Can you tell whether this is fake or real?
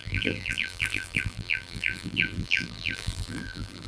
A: fake